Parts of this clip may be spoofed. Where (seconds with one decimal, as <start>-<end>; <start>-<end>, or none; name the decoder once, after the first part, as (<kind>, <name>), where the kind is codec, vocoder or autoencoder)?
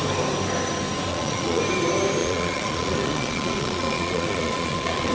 1.1-1.6 (vocoder, Vocos); 2.2-5.1